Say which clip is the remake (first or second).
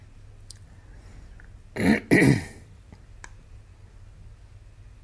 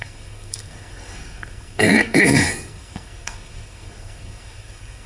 second